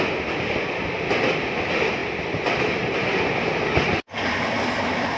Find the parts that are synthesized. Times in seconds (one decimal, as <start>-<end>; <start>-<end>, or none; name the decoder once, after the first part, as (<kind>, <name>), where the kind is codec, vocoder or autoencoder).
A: none